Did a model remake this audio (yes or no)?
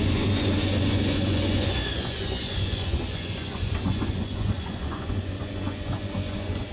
yes